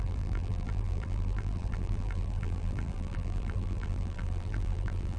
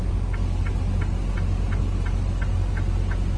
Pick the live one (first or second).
second